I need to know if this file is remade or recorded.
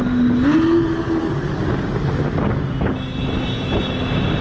recorded